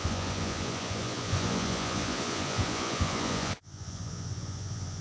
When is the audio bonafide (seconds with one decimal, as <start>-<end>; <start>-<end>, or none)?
none